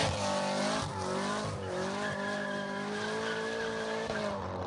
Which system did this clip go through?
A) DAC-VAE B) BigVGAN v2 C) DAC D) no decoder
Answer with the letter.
D